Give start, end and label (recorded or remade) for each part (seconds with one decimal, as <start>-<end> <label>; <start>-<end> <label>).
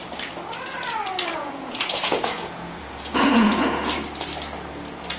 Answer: 0.0-1.3 recorded; 1.3-3.9 remade; 3.9-5.2 recorded